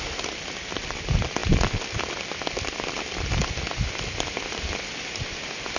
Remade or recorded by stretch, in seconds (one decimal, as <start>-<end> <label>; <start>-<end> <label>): 0.0-5.8 recorded